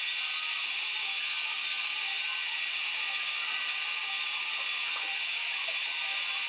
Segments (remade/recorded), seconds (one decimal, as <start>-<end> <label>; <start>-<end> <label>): 0.0-6.5 recorded